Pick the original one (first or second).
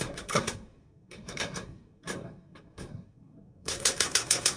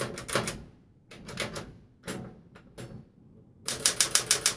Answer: second